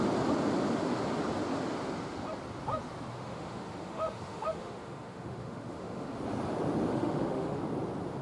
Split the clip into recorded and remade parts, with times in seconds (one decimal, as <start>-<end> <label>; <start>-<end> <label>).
0.0-3.1 recorded; 3.1-6.2 remade; 6.2-6.9 recorded; 6.9-7.6 remade; 7.6-8.2 recorded